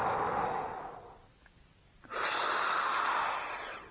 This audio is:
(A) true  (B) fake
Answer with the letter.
A